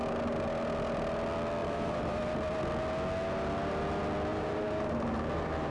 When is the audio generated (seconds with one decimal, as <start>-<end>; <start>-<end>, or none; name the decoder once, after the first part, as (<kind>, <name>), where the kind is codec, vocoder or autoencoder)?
1.6-2.6 (vocoder, BigVGAN v2); 4.3-5.7